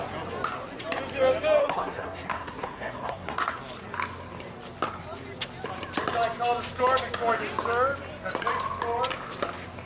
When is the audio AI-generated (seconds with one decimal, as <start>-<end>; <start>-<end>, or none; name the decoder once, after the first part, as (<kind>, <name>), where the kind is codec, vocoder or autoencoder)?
1.6-3.6 (codec, SNAC)